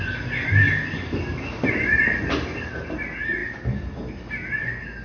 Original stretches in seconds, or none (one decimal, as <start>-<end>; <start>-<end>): 0.0-5.0